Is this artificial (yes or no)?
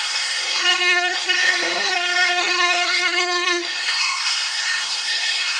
yes